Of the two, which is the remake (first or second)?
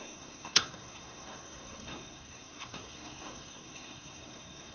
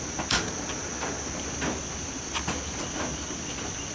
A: first